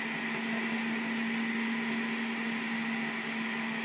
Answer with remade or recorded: recorded